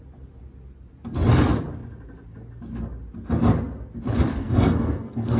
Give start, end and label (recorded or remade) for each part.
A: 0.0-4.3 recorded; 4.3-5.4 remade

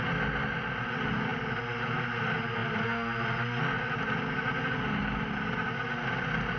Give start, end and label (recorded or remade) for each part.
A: 0.0-6.6 recorded

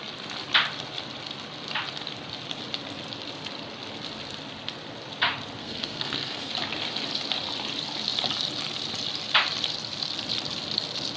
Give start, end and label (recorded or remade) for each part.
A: 0.0-5.6 recorded; 5.6-6.5 remade; 6.5-11.2 recorded

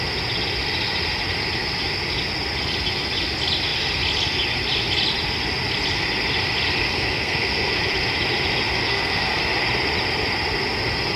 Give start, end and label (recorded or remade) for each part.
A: 0.0-6.9 recorded; 6.9-7.8 remade; 7.8-8.8 recorded; 8.8-9.4 remade; 9.4-11.2 recorded

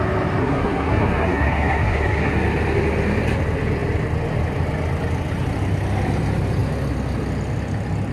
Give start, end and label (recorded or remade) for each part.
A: 0.0-0.4 recorded; 0.4-2.3 remade; 2.3-8.1 recorded

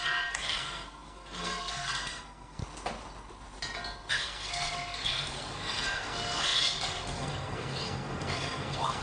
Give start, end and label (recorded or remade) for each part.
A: 0.0-2.6 remade; 2.6-4.1 recorded; 4.1-9.0 remade